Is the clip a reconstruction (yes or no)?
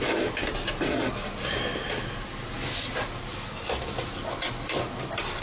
no